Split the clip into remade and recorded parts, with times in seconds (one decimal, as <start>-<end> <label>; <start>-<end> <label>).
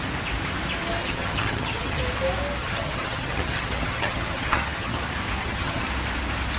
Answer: 0.0-1.0 recorded; 1.0-2.0 remade; 2.0-2.6 recorded; 2.6-5.0 remade; 5.0-5.4 recorded; 5.4-5.9 remade; 5.9-6.6 recorded